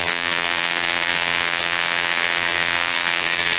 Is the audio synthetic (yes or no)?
yes